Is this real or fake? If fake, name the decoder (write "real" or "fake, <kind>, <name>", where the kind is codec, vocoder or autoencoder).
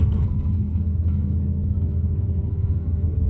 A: fake, codec, SNAC